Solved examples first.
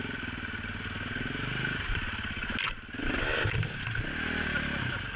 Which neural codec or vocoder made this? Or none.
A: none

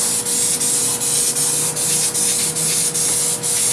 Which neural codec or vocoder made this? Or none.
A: none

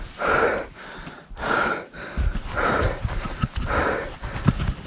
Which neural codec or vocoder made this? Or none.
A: none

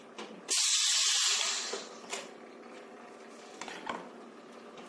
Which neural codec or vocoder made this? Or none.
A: none